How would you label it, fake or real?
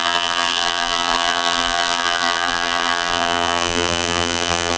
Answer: fake